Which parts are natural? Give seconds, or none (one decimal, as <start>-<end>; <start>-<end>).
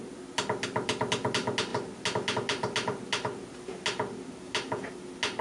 0.0-5.4